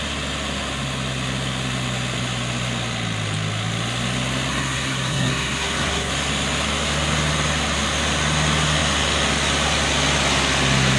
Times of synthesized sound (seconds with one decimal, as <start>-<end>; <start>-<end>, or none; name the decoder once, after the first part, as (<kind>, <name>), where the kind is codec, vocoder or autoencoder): 4.5-6.1 (codec, SNAC)